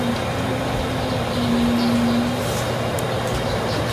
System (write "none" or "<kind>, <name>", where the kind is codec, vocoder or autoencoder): none